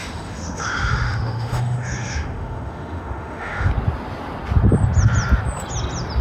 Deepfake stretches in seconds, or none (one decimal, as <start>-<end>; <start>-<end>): 0.0-3.7